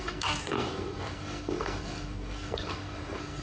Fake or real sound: fake